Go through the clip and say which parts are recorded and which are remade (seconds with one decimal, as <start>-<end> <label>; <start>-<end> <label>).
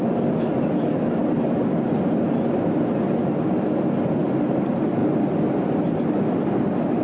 0.0-1.2 remade; 1.2-4.2 recorded; 4.2-5.0 remade; 5.0-5.7 recorded; 5.7-7.0 remade